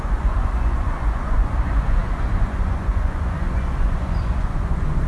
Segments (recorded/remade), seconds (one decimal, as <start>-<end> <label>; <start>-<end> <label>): 0.0-5.1 remade